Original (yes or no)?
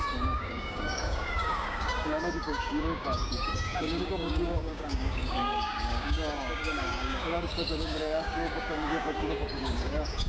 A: no